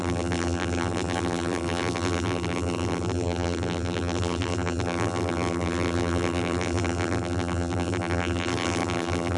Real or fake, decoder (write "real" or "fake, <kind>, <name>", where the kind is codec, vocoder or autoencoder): fake, vocoder, BigVGAN v2